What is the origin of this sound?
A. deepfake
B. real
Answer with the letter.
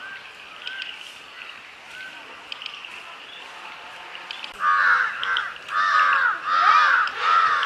B